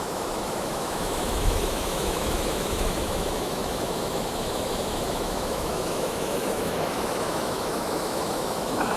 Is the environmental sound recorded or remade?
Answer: remade